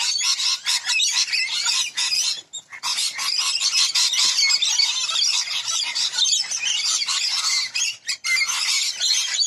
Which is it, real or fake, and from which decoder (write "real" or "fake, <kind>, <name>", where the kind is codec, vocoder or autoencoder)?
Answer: real